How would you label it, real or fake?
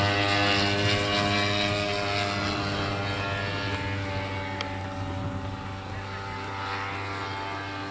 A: real